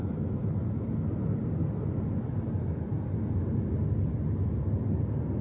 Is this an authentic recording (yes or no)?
yes